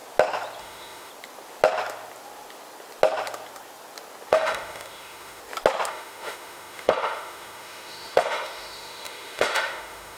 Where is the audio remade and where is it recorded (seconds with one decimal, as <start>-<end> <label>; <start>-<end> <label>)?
0.0-0.6 recorded; 0.6-1.1 remade; 1.1-4.3 recorded; 4.3-5.4 remade; 5.4-5.9 recorded; 5.9-10.2 remade